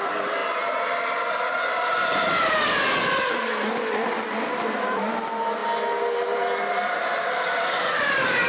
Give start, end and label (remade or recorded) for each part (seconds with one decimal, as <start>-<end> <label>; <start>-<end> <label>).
0.0-8.5 recorded